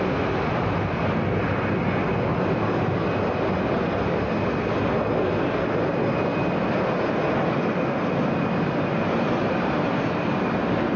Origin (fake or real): real